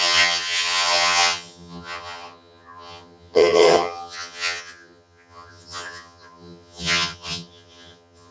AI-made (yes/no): yes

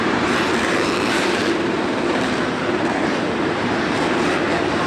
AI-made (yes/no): yes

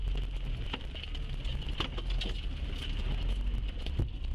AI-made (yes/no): no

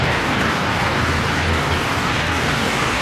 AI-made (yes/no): yes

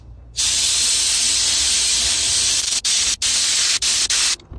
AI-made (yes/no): no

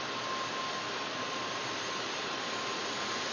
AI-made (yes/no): no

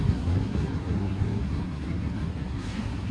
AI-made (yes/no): yes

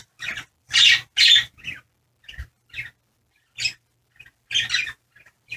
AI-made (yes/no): no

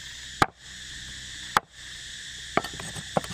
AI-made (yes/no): no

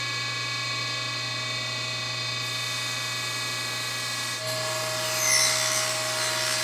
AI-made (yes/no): no